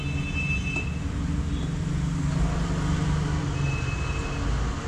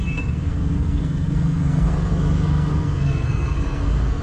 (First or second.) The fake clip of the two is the second